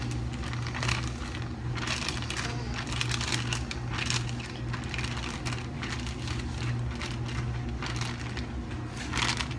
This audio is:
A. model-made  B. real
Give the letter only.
B